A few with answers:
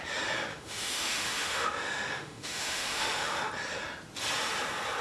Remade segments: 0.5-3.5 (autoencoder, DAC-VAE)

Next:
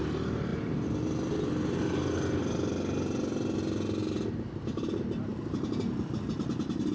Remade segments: none

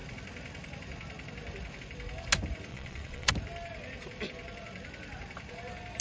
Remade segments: 2.7-3.3 (vocoder, WaveNeXt)

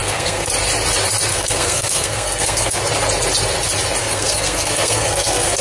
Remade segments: 0.0-0.5 (codec, SNAC); 1.3-2.8; 4.0-5.6

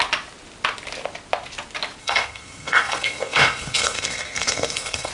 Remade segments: 2.0-5.1 (codec, SNAC)

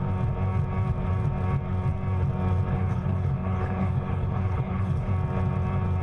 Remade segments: 2.7-5.1 (codec, HILCodec)

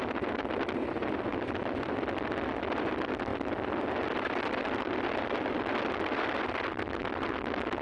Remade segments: none